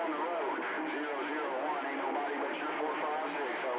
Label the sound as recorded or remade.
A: recorded